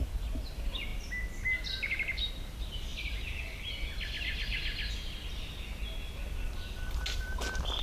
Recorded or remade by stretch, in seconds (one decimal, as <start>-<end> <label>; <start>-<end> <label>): 0.0-7.8 recorded